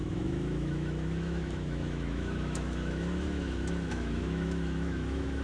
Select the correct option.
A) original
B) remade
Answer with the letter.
B